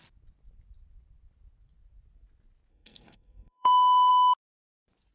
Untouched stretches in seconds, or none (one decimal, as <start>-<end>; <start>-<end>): 0.0-2.7; 4.1-5.1

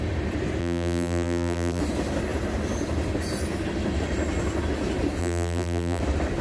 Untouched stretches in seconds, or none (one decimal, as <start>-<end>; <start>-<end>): 0.0-0.6; 1.8-5.2; 6.0-6.4

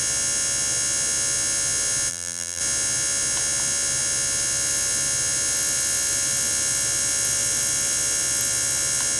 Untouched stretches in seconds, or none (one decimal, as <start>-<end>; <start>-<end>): 0.0-2.1; 2.6-9.2

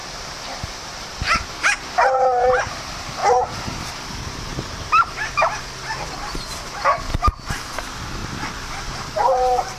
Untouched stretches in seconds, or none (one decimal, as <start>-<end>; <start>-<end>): 1.2-3.2; 4.0-4.5; 5.6-8.2